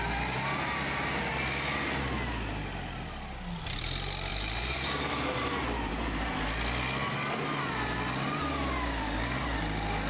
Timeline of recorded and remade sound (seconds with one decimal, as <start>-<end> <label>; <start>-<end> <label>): 0.0-4.3 recorded; 4.3-6.4 remade; 6.4-10.1 recorded